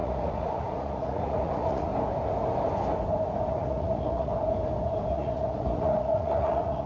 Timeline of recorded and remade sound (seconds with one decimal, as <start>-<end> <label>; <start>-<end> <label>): 0.0-1.9 remade; 1.9-3.5 recorded; 3.5-4.3 remade; 4.3-5.1 recorded; 5.1-6.9 remade